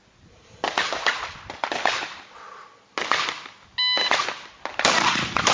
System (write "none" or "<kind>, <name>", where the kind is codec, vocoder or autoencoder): none